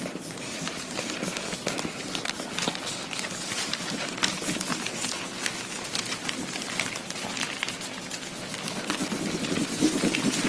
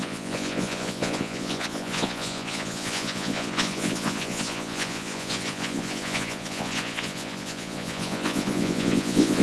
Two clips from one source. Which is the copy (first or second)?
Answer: second